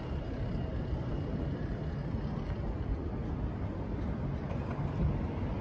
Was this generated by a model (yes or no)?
no